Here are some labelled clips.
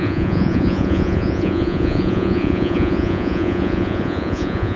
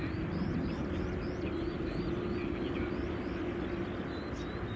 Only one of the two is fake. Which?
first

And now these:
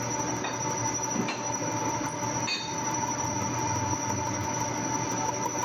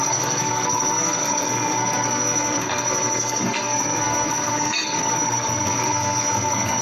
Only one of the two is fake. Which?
second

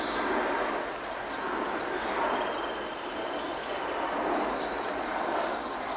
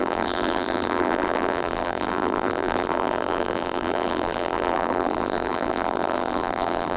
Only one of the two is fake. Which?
second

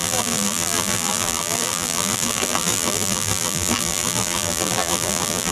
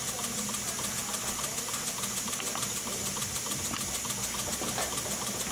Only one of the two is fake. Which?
first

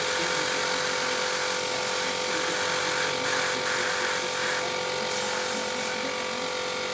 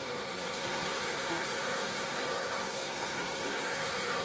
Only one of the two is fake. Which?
second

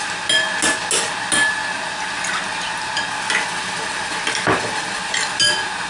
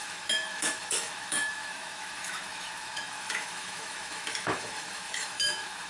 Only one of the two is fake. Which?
second